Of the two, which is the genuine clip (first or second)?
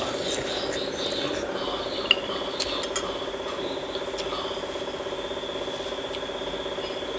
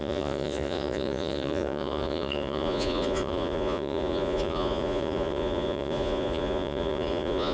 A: first